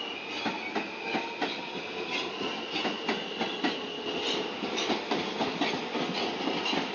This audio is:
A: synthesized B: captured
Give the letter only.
B